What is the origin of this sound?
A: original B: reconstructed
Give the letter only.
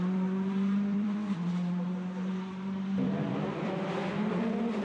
B